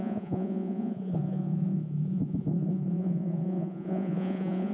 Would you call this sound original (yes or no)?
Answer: no